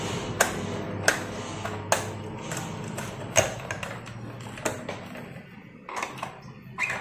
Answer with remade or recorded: recorded